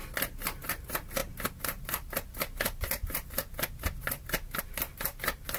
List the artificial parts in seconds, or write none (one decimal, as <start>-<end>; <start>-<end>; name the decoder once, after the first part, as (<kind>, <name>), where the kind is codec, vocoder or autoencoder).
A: none